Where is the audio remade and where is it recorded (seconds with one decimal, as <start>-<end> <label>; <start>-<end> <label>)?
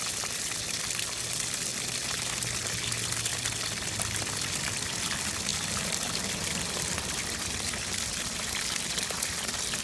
0.0-3.3 recorded; 3.3-3.9 remade; 3.9-9.8 recorded